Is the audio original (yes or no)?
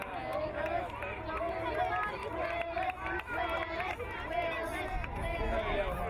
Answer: yes